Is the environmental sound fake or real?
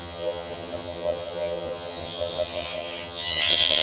fake